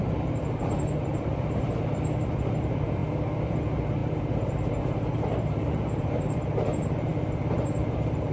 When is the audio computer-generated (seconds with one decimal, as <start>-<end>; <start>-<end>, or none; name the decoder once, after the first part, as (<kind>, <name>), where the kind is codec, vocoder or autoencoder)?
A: 0.0-3.0 (vocoder, BigVGAN v2); 3.6-8.3